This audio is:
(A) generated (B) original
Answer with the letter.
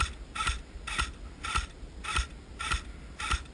B